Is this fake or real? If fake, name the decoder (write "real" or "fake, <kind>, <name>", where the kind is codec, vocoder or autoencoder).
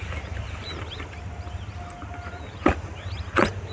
real